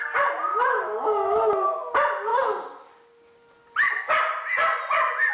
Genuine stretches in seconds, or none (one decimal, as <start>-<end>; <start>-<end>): 0.0-0.5; 1.5-5.3